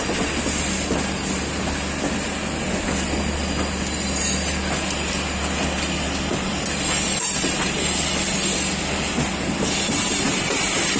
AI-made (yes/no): no